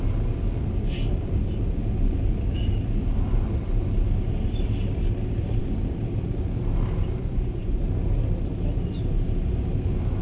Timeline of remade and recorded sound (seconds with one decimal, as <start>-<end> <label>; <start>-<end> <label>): 0.0-7.2 recorded; 7.2-7.8 remade; 7.8-10.2 recorded